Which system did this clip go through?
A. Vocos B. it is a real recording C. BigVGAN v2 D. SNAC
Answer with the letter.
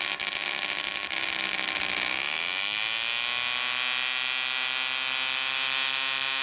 B